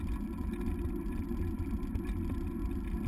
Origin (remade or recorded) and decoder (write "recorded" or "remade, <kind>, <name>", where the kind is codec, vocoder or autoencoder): recorded